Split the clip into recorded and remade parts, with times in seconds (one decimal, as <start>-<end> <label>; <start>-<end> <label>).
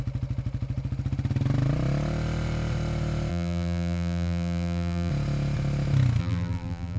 0.0-3.3 recorded; 3.3-5.1 remade; 5.1-6.2 recorded; 6.2-7.0 remade